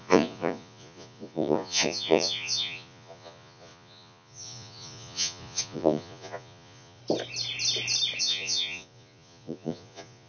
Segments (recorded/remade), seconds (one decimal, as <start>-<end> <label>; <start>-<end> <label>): 0.0-7.0 remade; 7.0-8.2 recorded; 8.2-10.3 remade